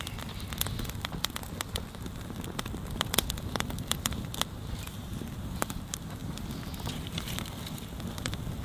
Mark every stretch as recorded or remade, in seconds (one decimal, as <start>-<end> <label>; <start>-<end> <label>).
0.0-8.6 recorded